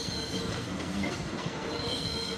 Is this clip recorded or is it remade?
remade